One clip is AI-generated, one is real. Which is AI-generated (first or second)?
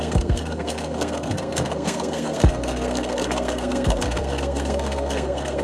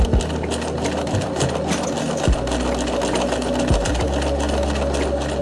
first